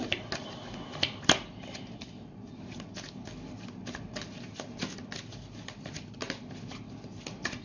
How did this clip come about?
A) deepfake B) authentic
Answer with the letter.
B